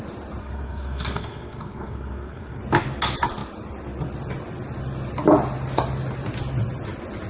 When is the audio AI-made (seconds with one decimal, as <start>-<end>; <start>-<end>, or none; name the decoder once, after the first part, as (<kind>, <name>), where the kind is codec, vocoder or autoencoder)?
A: 0.4-2.6 (codec, SNAC)